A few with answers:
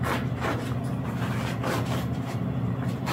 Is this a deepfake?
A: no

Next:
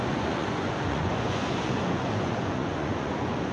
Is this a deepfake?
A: yes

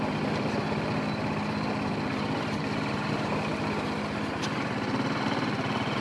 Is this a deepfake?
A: no